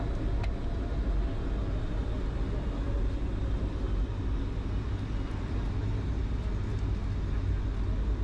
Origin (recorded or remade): recorded